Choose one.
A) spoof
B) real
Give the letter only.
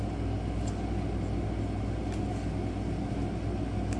B